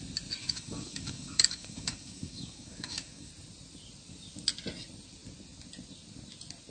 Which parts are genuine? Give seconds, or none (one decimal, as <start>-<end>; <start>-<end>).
0.0-0.4; 3.3-6.7